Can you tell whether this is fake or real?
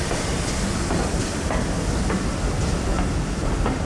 real